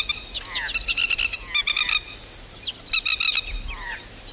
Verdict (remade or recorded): recorded